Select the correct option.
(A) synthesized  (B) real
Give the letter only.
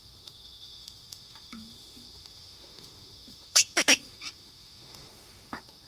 A